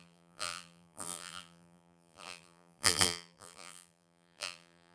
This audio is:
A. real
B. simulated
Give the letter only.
B